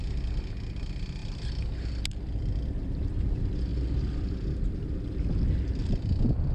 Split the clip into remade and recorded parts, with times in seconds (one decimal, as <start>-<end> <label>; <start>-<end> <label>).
0.0-6.5 recorded